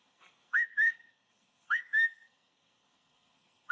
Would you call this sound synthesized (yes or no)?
yes